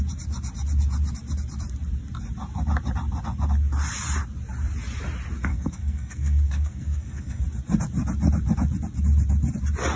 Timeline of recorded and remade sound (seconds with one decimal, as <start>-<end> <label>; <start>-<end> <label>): 0.0-5.5 recorded; 5.5-7.4 remade; 7.4-10.0 recorded